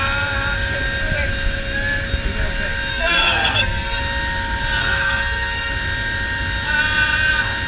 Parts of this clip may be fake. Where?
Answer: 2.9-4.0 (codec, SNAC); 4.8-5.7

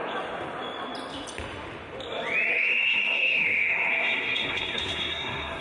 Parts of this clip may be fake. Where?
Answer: 2.5-5.6 (codec, SNAC)